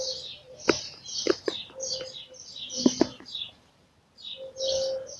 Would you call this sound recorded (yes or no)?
yes